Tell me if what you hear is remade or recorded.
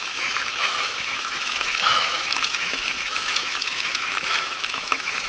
remade